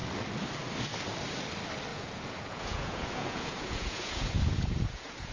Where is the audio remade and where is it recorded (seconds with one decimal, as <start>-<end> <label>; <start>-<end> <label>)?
0.0-1.9 recorded; 1.9-5.3 remade